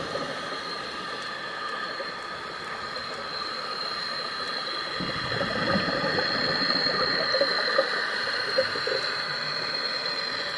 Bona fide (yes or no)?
no